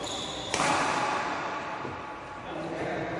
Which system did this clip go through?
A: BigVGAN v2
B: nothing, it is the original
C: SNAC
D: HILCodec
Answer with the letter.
A